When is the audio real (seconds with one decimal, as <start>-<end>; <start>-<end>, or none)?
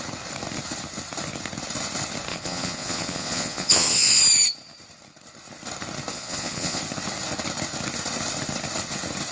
0.0-2.3; 4.2-6.1; 6.8-9.3